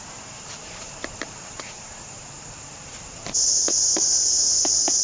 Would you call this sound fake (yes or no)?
yes